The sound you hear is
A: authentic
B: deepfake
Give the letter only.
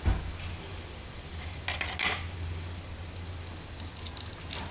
A